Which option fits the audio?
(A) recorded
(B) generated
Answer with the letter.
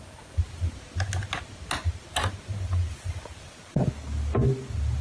A